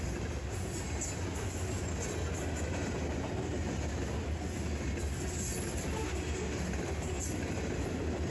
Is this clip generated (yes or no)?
no